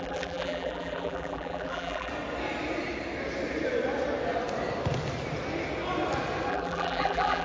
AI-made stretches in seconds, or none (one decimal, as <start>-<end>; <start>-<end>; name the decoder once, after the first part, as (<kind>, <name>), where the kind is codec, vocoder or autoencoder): 0.0-2.1 (vocoder, BigVGAN v2); 6.5-7.4